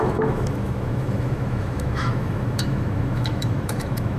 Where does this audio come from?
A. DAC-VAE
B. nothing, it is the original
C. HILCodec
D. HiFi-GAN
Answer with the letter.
A